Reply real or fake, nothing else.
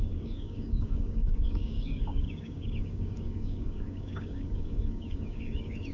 fake